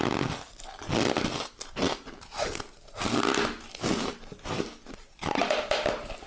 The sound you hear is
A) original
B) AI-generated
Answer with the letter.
A